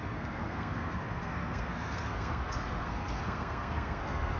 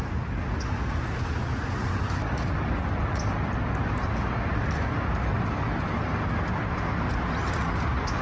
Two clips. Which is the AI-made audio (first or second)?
first